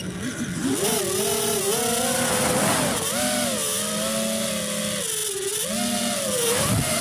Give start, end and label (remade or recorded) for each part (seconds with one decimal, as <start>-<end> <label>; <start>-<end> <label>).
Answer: 0.0-7.0 recorded